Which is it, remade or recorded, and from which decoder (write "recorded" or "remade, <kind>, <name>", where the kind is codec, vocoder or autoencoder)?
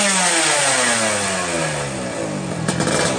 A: recorded